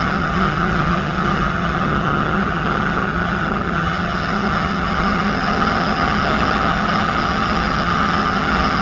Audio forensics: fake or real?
fake